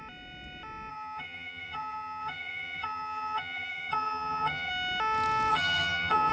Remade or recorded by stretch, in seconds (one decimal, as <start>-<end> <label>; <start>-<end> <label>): 0.0-0.9 recorded; 0.9-4.7 remade; 4.7-5.5 recorded; 5.5-6.3 remade